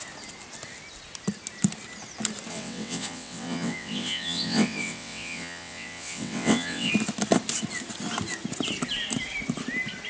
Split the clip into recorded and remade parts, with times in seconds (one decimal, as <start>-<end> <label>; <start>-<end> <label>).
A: 0.0-2.5 recorded; 2.5-6.9 remade; 6.9-10.1 recorded